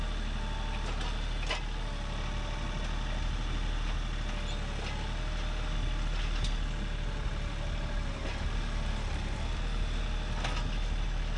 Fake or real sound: real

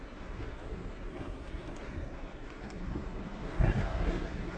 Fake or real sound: fake